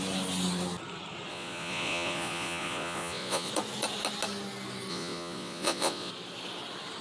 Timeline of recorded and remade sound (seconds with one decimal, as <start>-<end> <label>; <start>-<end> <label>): 0.0-1.3 recorded; 1.3-3.5 remade; 3.5-4.9 recorded; 4.9-6.1 remade; 6.1-7.0 recorded

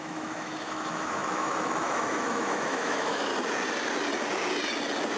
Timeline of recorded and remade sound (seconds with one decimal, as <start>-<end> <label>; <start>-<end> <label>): 0.0-3.3 remade; 3.3-5.2 recorded

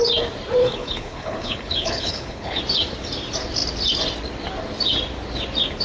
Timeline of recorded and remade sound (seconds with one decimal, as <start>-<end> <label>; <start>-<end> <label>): 0.0-0.6 recorded; 0.6-2.6 remade; 2.6-5.8 recorded